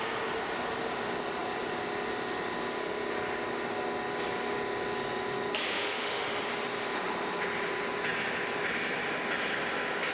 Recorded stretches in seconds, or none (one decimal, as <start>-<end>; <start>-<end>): 0.0-5.7; 6.4-10.1